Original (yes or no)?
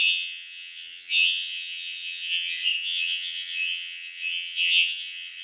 no